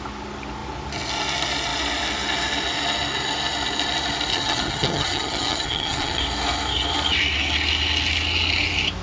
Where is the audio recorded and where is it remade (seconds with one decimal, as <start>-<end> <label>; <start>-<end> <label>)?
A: 0.0-4.3 recorded; 4.3-6.2 remade; 6.2-9.0 recorded